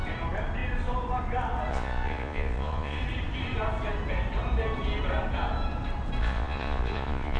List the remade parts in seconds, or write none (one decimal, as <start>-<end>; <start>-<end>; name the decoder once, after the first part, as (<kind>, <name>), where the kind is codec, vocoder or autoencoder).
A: 1.7-3.0 (vocoder, Vocos); 6.2-7.4